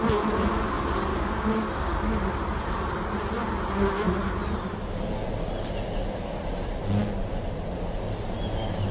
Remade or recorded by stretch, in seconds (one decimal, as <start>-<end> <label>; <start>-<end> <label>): 0.0-1.1 recorded; 1.1-2.0 remade; 2.0-8.9 recorded